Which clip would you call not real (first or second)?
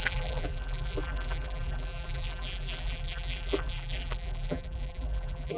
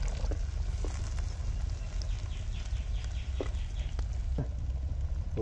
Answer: first